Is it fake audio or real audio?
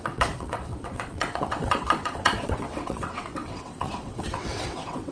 fake